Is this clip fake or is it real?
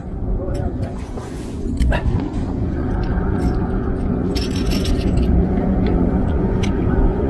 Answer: fake